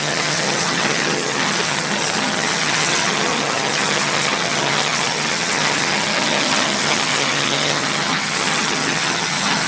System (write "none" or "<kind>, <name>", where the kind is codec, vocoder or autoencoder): vocoder, HiFi-GAN